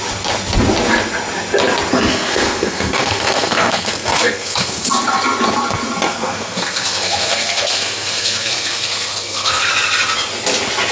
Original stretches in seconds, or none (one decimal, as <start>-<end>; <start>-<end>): 0.0-2.1; 4.9-6.1; 9.7-10.9